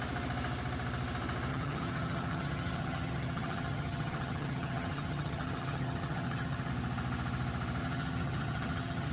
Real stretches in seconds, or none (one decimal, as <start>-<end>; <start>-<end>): 0.0-1.5; 6.7-7.8